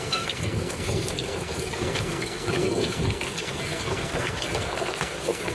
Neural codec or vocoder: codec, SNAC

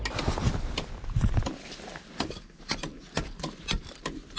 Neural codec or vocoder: none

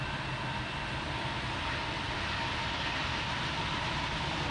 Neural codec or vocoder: none